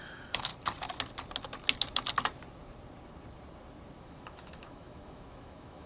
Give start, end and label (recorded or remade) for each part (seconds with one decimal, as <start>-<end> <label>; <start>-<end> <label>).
0.0-0.5 remade; 0.5-4.0 recorded; 4.0-5.9 remade